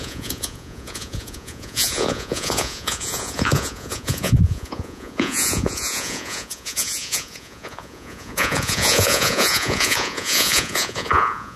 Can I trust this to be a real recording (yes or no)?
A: no